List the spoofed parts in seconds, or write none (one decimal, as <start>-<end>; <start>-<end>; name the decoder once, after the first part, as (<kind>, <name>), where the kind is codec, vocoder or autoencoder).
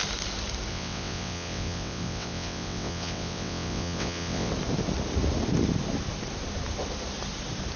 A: 0.7-4.5 (vocoder, WaveNeXt)